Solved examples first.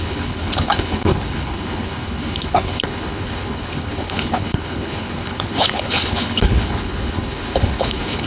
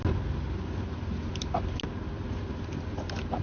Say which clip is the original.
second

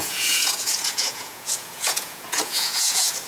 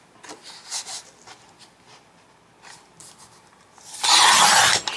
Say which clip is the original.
second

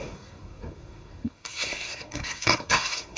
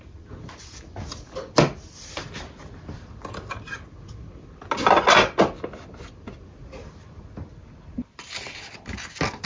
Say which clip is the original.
second